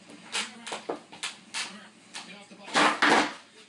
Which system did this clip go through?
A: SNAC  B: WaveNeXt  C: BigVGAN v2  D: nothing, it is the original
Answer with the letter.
D